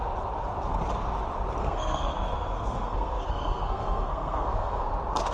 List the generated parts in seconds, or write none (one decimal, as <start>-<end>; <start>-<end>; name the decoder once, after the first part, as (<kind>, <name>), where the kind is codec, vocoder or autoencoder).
1.6-4.8 (codec, SNAC)